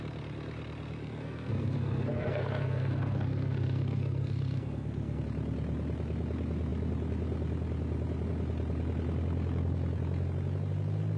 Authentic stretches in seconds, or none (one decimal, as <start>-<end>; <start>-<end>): 0.0-1.0; 5.2-11.2